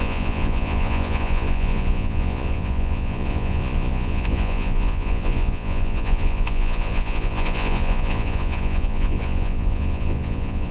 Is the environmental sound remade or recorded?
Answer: remade